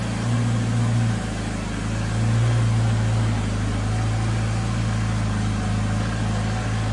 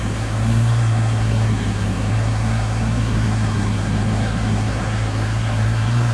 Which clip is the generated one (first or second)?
second